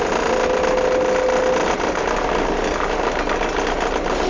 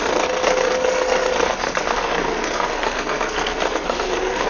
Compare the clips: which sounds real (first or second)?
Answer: first